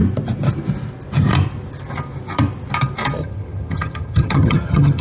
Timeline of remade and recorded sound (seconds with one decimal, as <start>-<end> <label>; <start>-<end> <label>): 0.0-3.2 recorded; 3.2-5.0 remade